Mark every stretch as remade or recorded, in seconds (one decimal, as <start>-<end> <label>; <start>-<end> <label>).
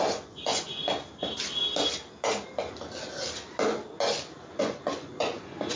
0.0-0.9 remade; 0.9-4.4 recorded; 4.4-5.8 remade